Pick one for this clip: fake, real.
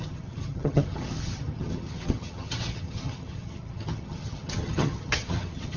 fake